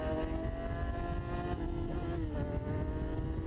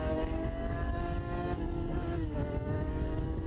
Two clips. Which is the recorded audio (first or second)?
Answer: first